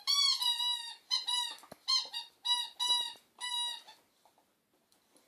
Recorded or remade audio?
recorded